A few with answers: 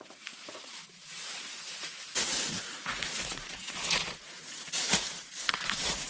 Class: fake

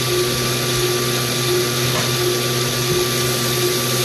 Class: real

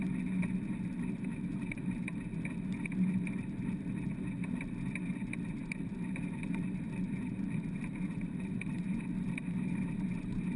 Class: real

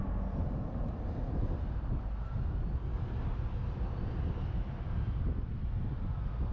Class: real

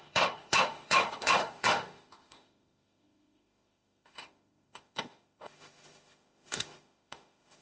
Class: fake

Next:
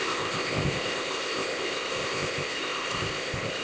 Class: fake